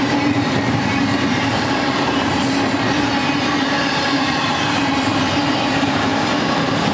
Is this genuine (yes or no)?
no